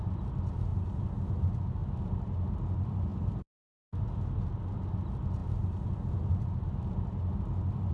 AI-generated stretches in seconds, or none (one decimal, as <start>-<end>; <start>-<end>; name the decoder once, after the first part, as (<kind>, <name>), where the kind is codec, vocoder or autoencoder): none